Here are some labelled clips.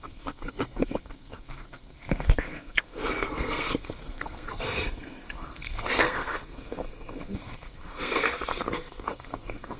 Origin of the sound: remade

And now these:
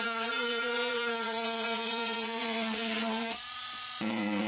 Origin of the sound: remade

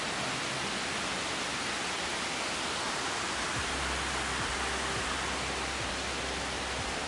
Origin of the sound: recorded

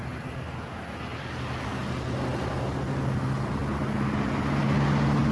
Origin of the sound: recorded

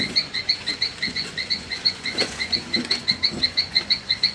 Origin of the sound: remade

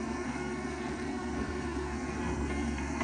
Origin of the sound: remade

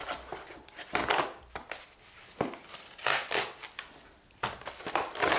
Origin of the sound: recorded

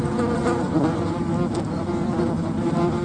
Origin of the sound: recorded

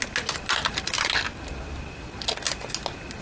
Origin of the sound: recorded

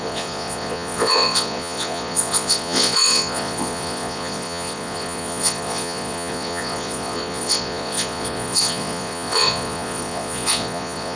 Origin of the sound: remade